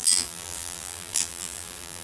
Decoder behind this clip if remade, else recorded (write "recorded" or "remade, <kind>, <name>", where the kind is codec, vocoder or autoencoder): remade, vocoder, BigVGAN v2